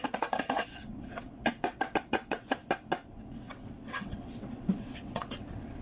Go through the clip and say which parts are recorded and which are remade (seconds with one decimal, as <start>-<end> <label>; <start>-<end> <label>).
0.0-2.6 remade; 2.6-3.1 recorded; 3.1-5.8 remade